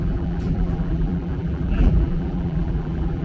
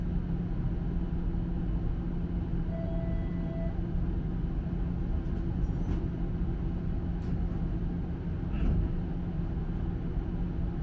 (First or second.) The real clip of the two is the second